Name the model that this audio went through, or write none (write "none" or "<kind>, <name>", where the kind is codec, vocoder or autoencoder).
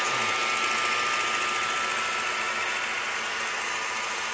none